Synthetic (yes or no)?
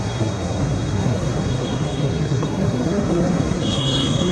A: yes